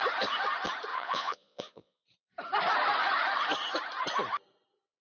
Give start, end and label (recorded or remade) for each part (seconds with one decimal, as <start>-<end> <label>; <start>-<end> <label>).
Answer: 0.0-0.9 recorded; 0.9-2.0 remade; 2.0-5.0 recorded

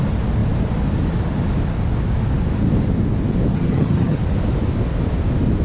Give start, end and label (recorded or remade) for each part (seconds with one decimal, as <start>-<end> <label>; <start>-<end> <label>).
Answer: 0.0-3.5 recorded; 3.5-4.2 remade; 4.2-5.6 recorded

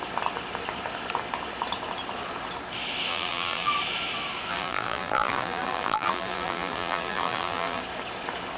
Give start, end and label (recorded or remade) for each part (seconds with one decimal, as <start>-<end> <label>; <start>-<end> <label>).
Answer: 0.0-3.1 recorded; 3.1-3.7 remade; 3.7-4.5 recorded; 4.5-7.8 remade; 7.8-8.6 recorded

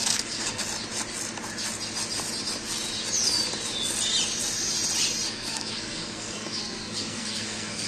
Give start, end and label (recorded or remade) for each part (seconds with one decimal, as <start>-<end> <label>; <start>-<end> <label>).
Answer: 0.0-0.6 remade; 0.6-5.3 recorded; 5.3-7.9 remade

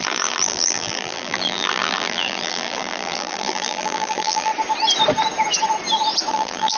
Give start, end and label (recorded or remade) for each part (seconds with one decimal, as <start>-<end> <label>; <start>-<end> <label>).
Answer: 0.0-4.5 remade; 4.5-6.3 recorded; 6.3-6.8 remade

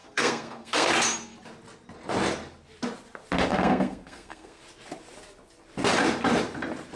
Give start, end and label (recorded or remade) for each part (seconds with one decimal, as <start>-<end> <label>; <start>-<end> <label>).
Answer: 0.0-0.9 remade; 0.9-3.5 recorded; 3.5-4.6 remade; 4.6-7.0 recorded

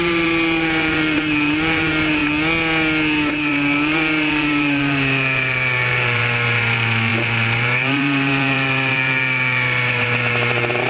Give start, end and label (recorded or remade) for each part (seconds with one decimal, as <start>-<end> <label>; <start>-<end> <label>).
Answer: 0.0-2.2 remade; 2.2-3.3 recorded; 3.3-10.9 remade